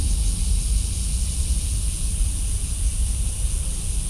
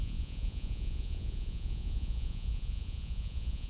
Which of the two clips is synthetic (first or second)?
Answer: second